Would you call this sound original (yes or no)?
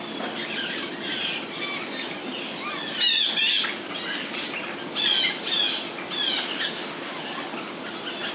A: yes